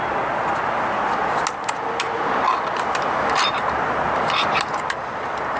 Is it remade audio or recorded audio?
recorded